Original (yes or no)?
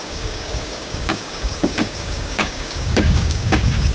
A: no